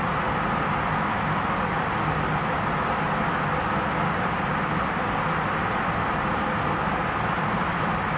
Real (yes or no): yes